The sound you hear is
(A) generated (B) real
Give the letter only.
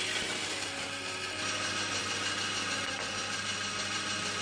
B